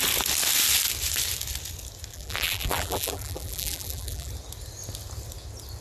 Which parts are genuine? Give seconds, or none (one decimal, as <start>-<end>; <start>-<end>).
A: 0.0-2.1; 4.3-5.8